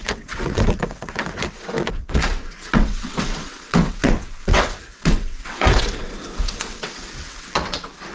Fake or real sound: fake